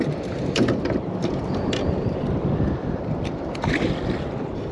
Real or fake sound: fake